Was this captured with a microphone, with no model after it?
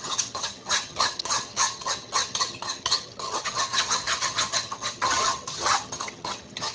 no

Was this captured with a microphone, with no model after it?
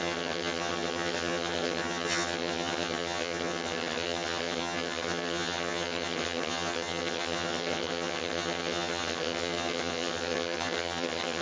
no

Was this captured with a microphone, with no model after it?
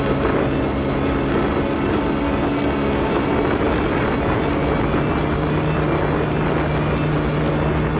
yes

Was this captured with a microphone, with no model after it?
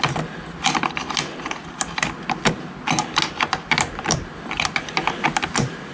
yes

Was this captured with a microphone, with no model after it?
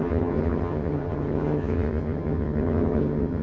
no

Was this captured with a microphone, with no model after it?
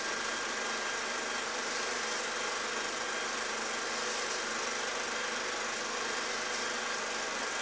yes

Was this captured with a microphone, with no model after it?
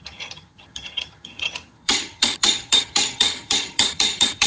no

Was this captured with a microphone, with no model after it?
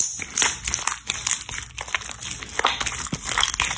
yes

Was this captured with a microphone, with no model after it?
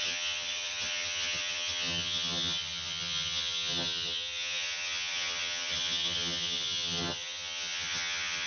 no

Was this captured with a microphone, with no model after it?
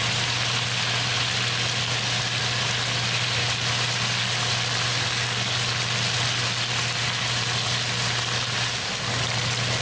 yes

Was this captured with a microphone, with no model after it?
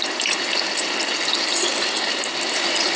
yes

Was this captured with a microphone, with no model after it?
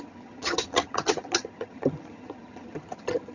no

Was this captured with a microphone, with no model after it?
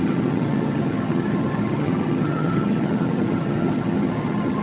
no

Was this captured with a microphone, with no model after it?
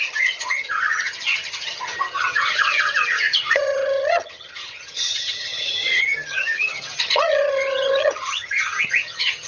no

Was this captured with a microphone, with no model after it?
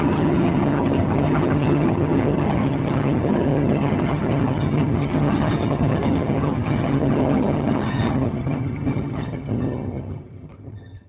no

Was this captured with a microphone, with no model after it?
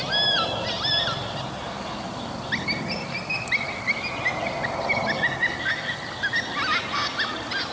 yes